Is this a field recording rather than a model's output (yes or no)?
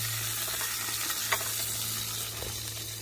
yes